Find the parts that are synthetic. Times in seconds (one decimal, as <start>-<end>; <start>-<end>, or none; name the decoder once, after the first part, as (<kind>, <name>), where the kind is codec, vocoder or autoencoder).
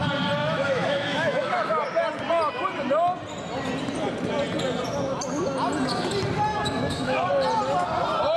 0.4-1.7 (autoencoder, DAC-VAE); 6.5-7.3